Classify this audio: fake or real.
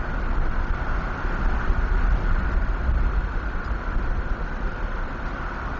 real